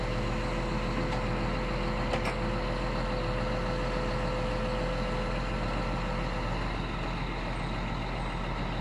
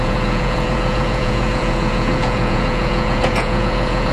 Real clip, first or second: first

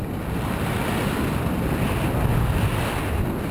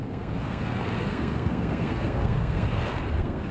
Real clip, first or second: first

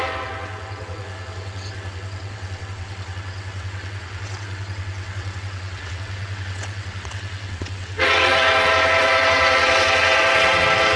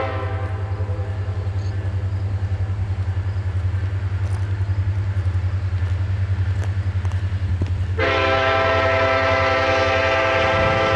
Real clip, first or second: second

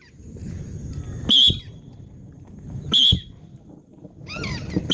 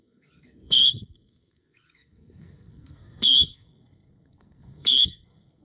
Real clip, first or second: first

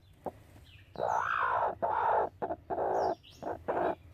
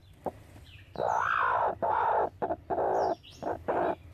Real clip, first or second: first